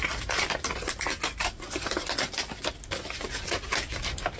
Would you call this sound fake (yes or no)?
no